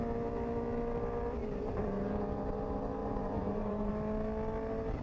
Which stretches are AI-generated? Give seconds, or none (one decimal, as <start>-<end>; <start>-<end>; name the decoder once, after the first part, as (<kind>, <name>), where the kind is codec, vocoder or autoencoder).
1.4-2.2 (vocoder, BigVGAN v2); 3.0-3.9